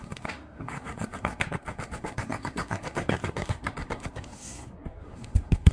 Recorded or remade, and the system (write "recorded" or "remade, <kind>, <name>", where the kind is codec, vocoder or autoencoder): remade, codec, SNAC